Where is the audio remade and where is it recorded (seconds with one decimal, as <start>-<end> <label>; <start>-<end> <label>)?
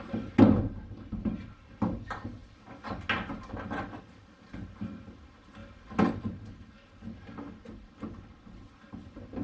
0.0-5.6 recorded; 5.6-6.2 remade; 6.2-9.4 recorded